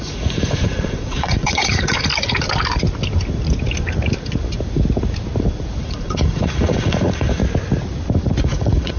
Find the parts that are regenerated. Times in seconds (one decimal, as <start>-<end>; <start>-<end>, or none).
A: 0.0-2.1; 5.8-7.4; 8.4-9.0